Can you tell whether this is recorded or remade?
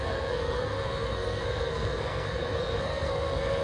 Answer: remade